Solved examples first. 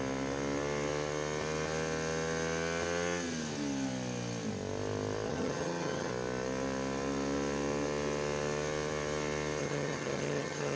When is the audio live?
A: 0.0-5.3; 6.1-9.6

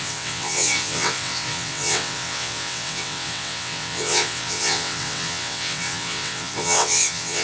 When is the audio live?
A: none

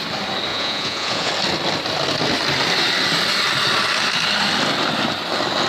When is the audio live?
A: 0.0-0.5; 1.3-5.7

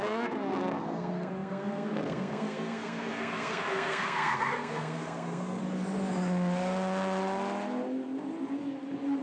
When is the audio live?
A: 5.6-9.2

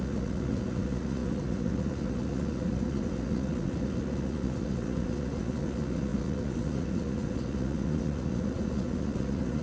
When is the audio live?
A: none